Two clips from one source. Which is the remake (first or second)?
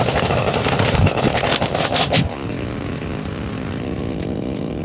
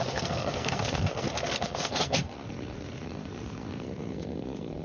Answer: second